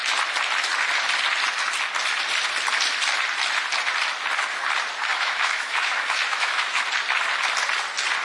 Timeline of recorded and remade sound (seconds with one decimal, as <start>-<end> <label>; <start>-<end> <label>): 0.0-5.1 recorded; 5.1-6.8 remade; 6.8-8.2 recorded